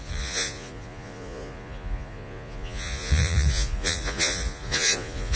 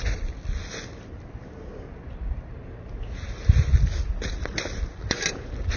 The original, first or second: second